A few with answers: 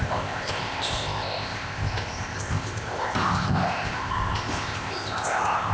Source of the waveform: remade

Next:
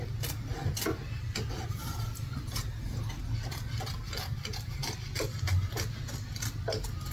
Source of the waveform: recorded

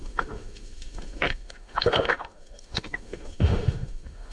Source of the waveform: remade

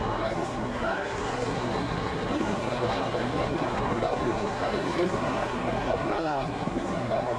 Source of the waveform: remade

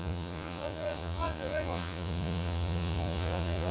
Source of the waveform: remade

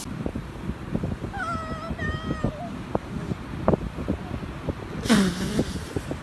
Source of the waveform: recorded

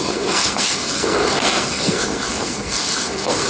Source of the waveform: remade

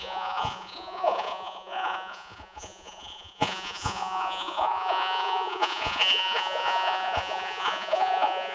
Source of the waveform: remade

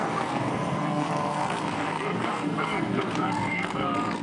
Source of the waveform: remade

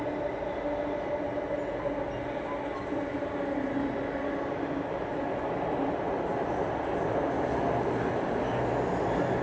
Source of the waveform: recorded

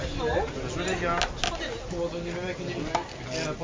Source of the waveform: recorded